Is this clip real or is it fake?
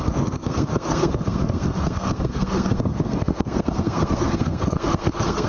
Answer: fake